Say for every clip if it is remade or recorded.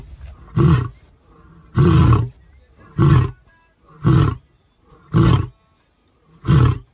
recorded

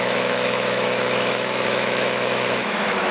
remade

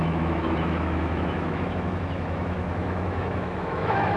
remade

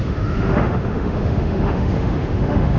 remade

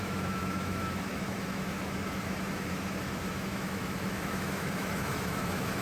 remade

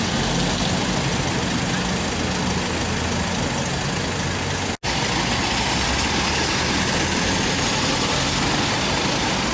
recorded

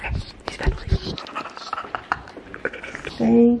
recorded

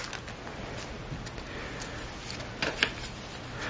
recorded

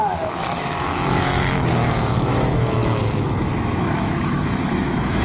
remade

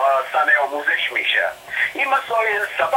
remade